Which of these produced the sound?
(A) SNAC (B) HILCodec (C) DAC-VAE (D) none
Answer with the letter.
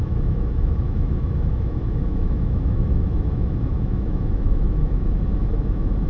C